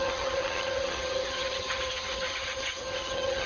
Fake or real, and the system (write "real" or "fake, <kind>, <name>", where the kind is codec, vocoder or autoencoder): fake, vocoder, HiFi-GAN